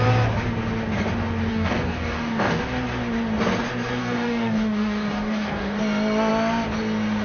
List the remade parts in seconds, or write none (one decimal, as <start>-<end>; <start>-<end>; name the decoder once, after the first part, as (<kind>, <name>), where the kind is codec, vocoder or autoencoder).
1.5-2.6 (codec, DAC); 4.0-5.8